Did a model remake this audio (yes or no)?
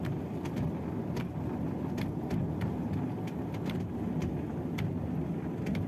no